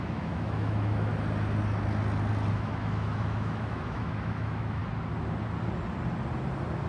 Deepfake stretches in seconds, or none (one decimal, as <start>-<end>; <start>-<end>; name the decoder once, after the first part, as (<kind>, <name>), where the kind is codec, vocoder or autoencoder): 0.0-1.1 (autoencoder, DAC-VAE); 2.5-4.8